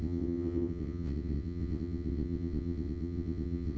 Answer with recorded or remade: remade